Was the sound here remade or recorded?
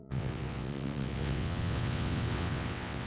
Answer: remade